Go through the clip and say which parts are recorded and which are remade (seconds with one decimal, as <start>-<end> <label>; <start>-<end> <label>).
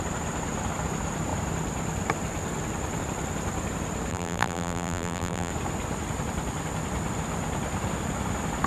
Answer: 0.0-4.1 recorded; 4.1-5.5 remade; 5.5-8.7 recorded